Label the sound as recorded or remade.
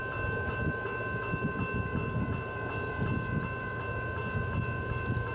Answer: recorded